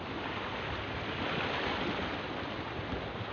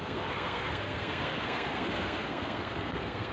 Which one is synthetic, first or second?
second